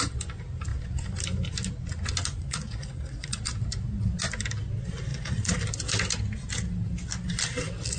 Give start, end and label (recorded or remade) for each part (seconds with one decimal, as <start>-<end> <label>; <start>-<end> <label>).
0.0-2.3 recorded; 2.3-3.4 remade; 3.4-5.1 recorded; 5.1-5.6 remade; 5.6-8.0 recorded